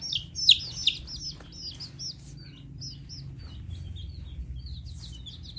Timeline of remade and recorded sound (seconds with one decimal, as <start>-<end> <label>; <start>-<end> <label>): 0.0-5.6 recorded